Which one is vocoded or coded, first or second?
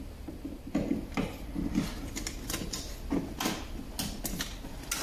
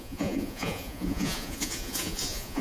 second